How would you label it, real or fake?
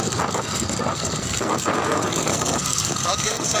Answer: fake